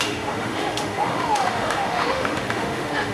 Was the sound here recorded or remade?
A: remade